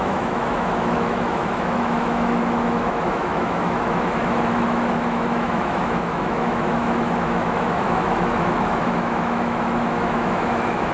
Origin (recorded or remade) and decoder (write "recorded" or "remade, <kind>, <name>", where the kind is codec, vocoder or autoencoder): remade, autoencoder, DAC-VAE